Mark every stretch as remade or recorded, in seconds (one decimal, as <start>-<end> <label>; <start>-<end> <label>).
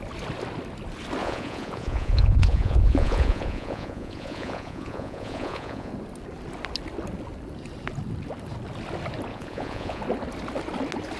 0.0-1.2 recorded; 1.2-5.9 remade; 5.9-9.3 recorded; 9.3-10.0 remade; 10.0-11.2 recorded